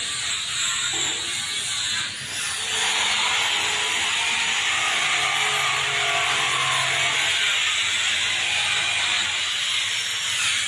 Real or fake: real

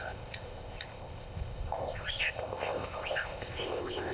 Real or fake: fake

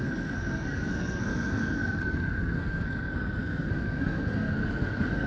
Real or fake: fake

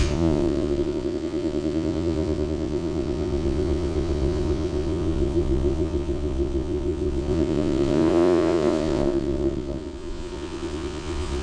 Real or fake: fake